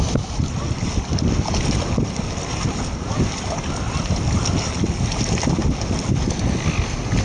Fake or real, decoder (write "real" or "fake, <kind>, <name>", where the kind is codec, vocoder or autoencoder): real